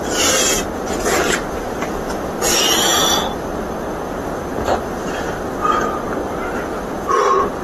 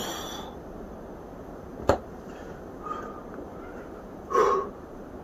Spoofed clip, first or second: second